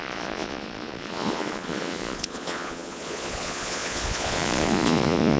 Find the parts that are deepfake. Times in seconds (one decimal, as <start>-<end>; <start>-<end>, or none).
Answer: 0.0-5.4